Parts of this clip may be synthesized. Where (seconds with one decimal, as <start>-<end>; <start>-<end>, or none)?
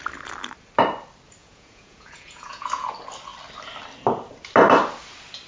1.4-2.9